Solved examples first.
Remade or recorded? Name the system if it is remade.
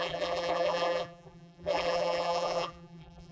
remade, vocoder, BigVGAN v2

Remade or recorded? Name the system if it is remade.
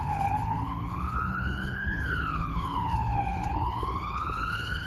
remade, codec, HILCodec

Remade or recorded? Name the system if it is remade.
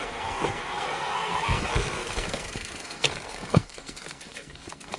remade, codec, SNAC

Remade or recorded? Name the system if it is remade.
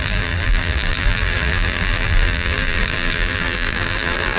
remade, vocoder, BigVGAN v2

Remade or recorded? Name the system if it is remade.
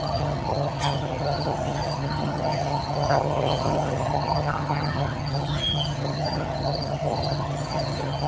remade, vocoder, HiFi-GAN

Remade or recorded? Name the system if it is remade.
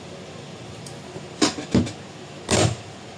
recorded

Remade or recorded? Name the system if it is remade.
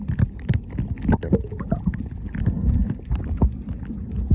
recorded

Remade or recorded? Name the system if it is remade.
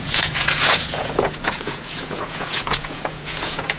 remade, vocoder, Vocos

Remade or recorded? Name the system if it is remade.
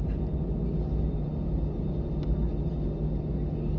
recorded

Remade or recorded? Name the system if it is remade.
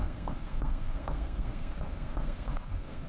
remade, codec, SNAC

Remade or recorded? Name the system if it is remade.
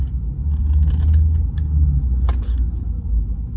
recorded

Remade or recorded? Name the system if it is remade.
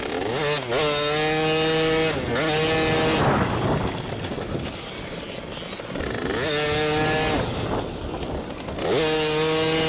recorded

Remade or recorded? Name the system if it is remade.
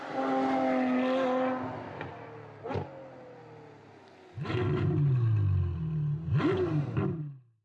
recorded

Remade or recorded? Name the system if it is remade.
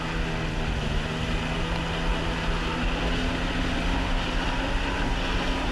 recorded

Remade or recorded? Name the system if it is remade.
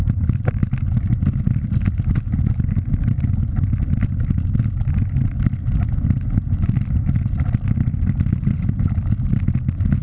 recorded